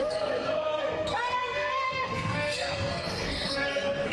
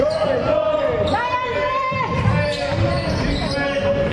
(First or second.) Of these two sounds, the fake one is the first